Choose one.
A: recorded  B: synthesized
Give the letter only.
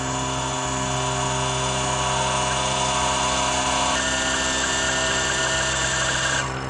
A